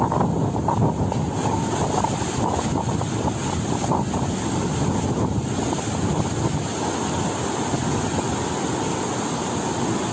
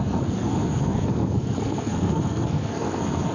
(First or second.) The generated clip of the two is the second